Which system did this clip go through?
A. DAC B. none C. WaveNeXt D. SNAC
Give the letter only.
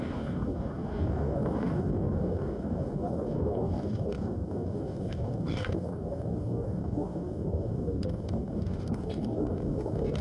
A